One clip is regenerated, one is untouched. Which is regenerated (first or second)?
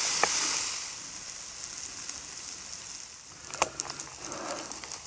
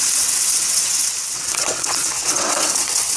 second